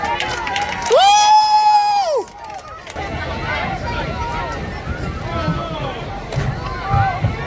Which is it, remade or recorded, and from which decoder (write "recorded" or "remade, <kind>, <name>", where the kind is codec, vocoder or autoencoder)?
recorded